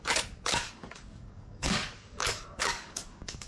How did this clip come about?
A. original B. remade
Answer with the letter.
B